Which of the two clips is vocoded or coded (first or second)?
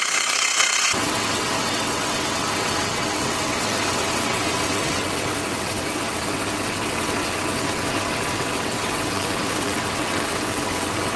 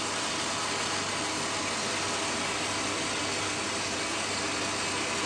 first